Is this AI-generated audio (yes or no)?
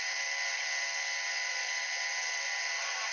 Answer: no